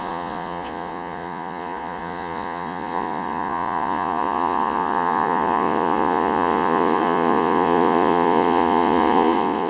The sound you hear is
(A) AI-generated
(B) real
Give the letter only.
A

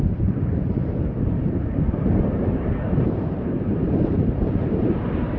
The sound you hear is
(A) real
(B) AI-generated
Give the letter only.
B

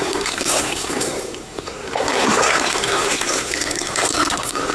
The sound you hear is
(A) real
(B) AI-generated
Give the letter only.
B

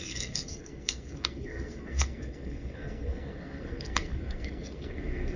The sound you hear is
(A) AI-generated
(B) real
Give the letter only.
A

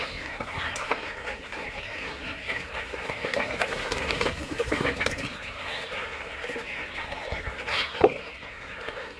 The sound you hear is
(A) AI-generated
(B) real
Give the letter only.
A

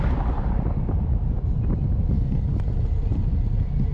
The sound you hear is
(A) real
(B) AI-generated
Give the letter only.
A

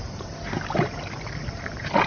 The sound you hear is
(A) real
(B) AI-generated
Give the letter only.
A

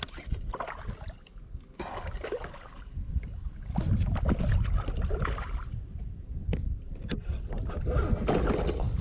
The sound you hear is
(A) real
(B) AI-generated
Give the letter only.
A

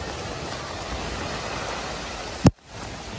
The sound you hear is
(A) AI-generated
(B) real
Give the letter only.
B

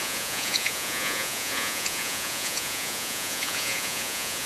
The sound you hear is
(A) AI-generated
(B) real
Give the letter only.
A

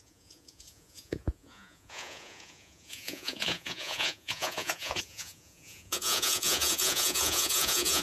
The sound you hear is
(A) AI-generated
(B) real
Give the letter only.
A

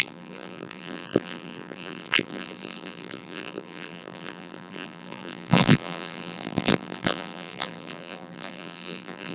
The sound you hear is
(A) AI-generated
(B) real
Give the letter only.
A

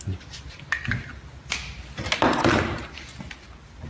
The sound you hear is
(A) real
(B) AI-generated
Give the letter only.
A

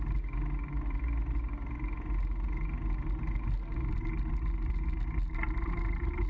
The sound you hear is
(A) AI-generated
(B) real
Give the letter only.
B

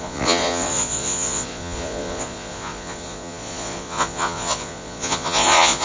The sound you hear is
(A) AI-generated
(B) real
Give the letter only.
A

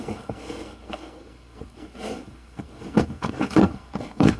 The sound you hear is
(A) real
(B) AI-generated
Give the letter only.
B